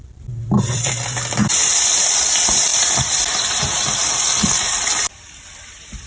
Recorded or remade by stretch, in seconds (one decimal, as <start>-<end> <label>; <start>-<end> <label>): 0.0-6.1 remade